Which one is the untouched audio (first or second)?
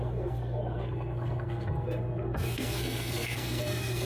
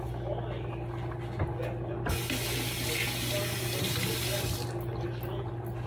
second